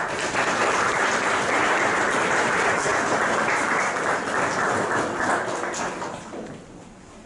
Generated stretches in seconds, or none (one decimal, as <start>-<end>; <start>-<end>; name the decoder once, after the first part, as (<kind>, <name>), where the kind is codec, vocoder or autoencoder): none